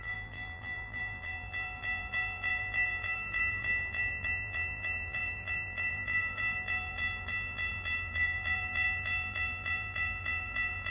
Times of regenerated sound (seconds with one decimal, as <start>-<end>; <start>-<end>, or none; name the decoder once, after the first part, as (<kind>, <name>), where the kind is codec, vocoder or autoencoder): 0.0-10.9 (vocoder, BigVGAN v2)